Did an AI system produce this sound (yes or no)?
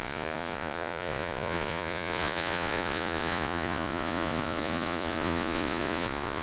yes